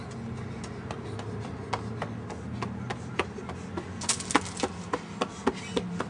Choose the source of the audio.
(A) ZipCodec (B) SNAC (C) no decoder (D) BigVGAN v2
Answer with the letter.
C